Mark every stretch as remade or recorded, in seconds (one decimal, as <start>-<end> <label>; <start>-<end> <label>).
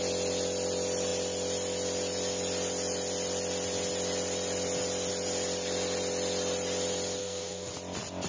0.0-7.2 recorded; 7.2-7.7 remade; 7.7-8.3 recorded